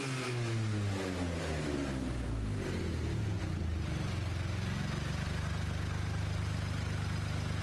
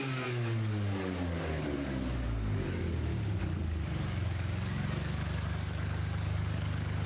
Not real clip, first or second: second